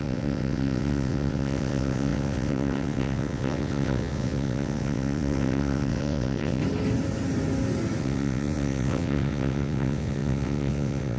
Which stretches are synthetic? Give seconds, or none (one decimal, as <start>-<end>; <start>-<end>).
0.0-6.6; 8.0-11.2